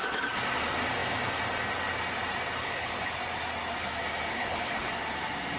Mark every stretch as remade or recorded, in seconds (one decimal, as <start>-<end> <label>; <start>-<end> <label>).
0.0-2.6 recorded; 2.6-3.1 remade; 3.1-4.3 recorded; 4.3-4.9 remade; 4.9-5.6 recorded